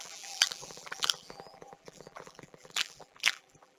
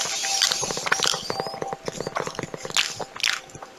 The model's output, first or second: first